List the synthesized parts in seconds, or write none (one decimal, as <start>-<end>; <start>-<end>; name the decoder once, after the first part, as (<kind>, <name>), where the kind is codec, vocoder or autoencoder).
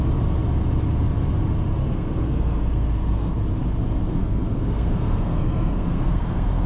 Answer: 1.8-3.3 (codec, SNAC); 4.1-6.7